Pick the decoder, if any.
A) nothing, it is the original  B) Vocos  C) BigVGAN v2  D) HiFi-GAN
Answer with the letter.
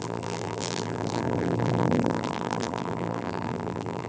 C